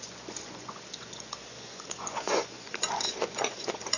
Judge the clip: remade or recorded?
remade